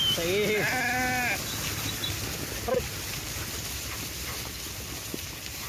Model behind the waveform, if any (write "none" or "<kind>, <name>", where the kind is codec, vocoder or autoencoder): none